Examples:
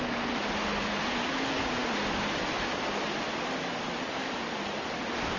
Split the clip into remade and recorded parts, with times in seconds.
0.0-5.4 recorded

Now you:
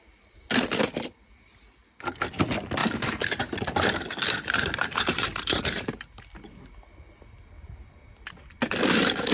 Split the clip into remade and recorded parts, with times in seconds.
0.0-2.8 recorded; 2.8-6.2 remade; 6.2-9.3 recorded

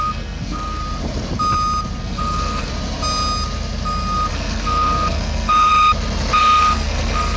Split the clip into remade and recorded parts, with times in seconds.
0.0-0.8 remade; 0.8-2.0 recorded; 2.0-2.7 remade; 2.7-4.3 recorded; 4.3-5.7 remade; 5.7-6.4 recorded; 6.4-7.4 remade

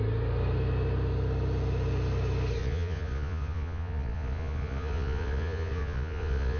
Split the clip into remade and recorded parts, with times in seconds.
0.0-2.6 recorded; 2.6-6.6 remade

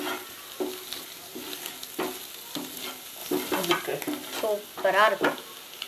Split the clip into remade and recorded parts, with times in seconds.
0.0-5.9 recorded

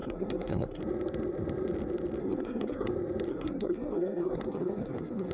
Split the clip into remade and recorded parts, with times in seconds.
0.0-0.8 remade; 0.8-2.2 recorded; 2.2-2.9 remade; 2.9-3.3 recorded; 3.3-5.3 remade